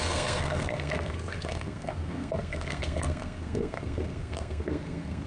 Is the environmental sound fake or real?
fake